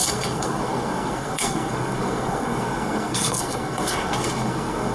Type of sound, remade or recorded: remade